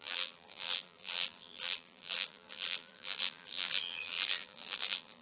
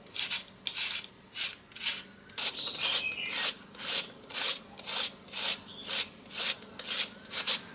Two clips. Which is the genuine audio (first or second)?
second